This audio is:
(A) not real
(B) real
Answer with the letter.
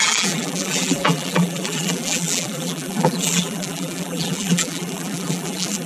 A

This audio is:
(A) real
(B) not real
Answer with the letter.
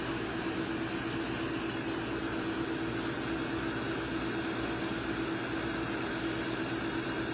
A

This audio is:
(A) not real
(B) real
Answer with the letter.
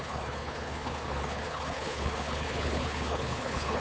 A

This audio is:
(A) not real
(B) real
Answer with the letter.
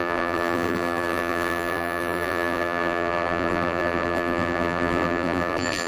A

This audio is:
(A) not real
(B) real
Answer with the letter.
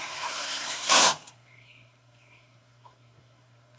A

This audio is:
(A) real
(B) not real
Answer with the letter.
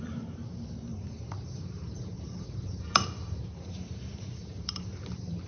B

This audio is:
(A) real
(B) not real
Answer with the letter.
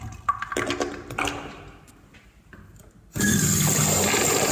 A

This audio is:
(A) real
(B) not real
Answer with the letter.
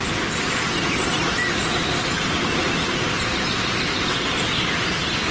A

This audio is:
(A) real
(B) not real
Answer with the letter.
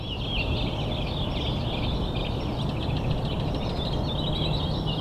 A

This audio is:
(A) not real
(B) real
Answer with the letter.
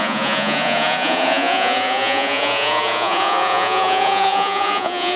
A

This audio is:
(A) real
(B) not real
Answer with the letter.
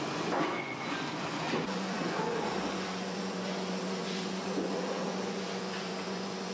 B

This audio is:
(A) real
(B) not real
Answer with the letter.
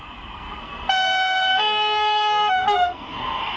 B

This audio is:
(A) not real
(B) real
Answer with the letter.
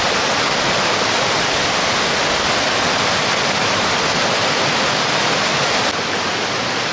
B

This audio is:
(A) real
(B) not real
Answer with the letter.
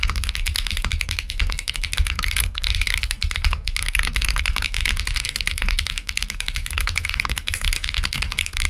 B